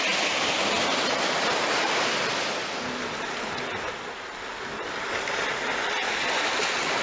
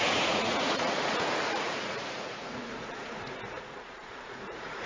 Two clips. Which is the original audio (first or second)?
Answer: first